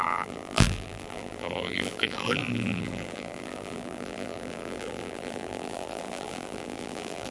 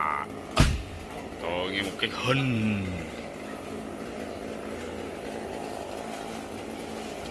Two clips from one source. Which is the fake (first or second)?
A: first